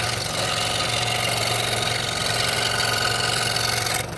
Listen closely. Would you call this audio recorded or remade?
recorded